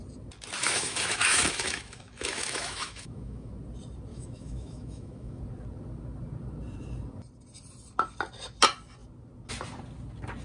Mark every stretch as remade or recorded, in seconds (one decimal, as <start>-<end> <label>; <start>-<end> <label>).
0.0-0.6 recorded; 0.6-3.5 remade; 3.5-4.1 recorded; 4.1-5.4 remade; 5.4-10.4 recorded